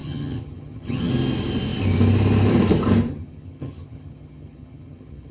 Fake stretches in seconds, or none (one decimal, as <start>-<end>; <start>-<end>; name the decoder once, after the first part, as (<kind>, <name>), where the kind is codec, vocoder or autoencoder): 0.0-1.1 (vocoder, HiFi-GAN); 3.1-5.3